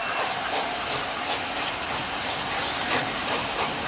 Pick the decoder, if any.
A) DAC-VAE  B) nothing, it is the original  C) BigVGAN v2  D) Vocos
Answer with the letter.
B